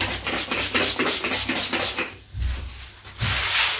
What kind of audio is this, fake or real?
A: real